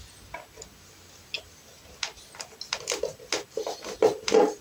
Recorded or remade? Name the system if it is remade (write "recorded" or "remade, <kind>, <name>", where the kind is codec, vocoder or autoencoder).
recorded